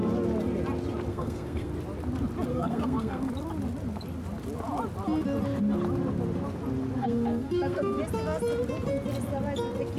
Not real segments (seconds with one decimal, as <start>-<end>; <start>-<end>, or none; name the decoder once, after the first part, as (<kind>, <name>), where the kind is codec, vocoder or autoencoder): 1.1-1.7 (codec, SNAC); 2.5-3.3; 7.0-8.0